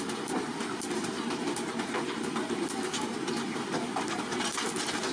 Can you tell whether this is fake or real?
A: fake